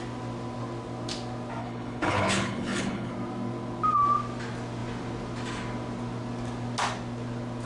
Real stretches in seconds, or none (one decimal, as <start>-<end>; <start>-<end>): 0.0-1.6; 3.1-7.7